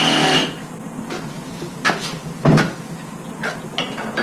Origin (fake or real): real